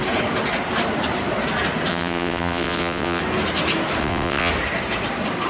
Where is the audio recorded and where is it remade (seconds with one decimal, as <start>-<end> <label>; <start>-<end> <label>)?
0.0-1.9 recorded; 1.9-3.2 remade; 3.2-4.0 recorded; 4.0-4.5 remade; 4.5-5.5 recorded